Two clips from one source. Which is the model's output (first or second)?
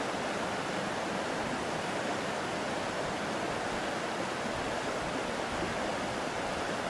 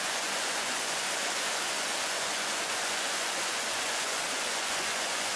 second